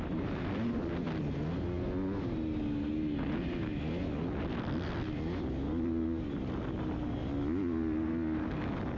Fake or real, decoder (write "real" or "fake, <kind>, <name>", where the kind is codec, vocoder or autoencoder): real